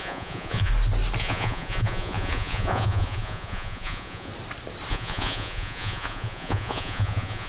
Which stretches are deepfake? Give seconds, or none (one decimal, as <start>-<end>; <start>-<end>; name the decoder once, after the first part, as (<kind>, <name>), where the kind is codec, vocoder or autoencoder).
0.0-0.7 (vocoder, Vocos); 1.2-4.3; 4.9-7.5